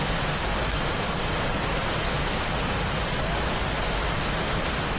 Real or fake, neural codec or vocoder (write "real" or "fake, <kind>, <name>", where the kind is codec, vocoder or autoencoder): real